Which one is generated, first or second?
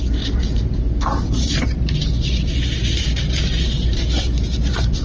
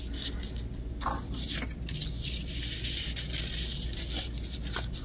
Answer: first